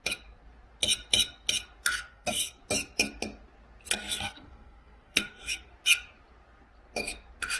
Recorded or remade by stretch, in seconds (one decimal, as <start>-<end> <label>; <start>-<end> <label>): 0.0-1.9 recorded; 1.9-2.6 remade; 2.6-4.0 recorded; 4.0-5.7 remade; 5.7-7.6 recorded